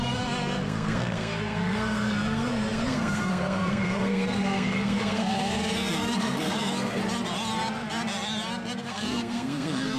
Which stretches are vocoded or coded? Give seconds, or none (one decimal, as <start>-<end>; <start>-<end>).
0.0-7.0; 8.8-10.0